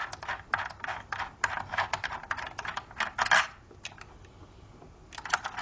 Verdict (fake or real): real